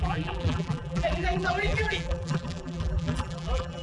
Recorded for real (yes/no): no